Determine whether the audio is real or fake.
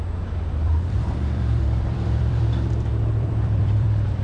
fake